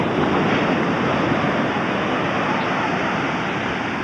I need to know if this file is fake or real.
real